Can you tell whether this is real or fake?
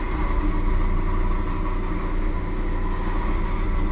real